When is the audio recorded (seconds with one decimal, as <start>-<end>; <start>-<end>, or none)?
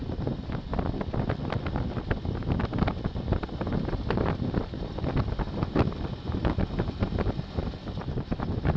0.7-1.9